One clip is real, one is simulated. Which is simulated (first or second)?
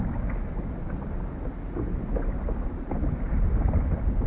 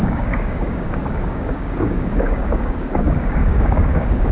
second